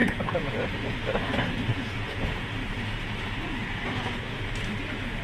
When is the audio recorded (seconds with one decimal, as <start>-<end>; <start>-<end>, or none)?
0.7-1.7; 2.5-5.2